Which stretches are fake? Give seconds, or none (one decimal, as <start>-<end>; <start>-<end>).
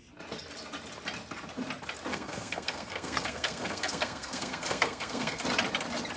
2.1-5.4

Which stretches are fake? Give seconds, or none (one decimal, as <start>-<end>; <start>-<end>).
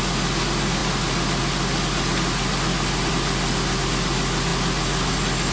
none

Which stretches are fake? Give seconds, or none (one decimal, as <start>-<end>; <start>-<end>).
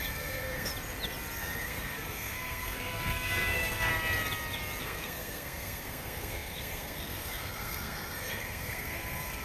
0.0-0.7; 1.4-3.9; 4.8-9.4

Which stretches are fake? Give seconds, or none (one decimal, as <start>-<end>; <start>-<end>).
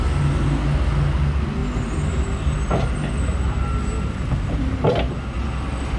none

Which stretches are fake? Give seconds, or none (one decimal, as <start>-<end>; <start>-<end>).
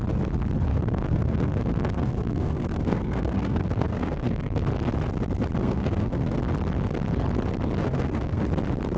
0.7-4.6; 5.6-6.4; 7.8-8.4